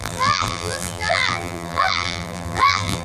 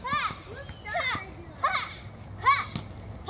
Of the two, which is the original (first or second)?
second